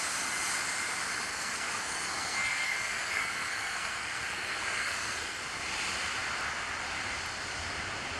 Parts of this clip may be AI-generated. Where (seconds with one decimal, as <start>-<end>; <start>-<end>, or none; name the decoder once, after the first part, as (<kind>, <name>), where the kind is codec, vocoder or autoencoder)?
1.3-5.4 (codec, SNAC)